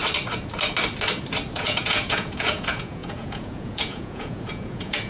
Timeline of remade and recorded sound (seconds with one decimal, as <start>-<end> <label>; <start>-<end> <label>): 0.0-1.5 recorded; 1.5-5.1 remade